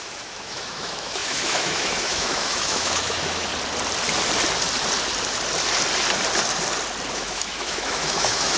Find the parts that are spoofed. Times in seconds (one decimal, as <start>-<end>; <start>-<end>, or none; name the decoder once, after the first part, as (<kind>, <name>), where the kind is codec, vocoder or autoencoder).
0.0-3.5 (autoencoder, DAC-VAE); 7.1-8.6